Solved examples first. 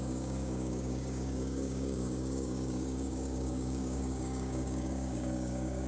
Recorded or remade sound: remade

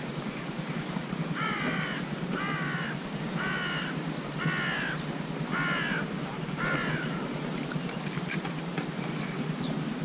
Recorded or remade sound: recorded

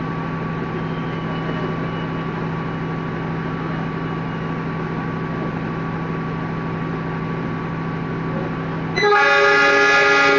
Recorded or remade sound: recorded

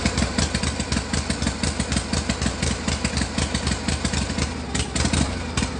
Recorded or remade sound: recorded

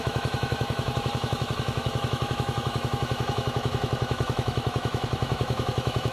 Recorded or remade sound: remade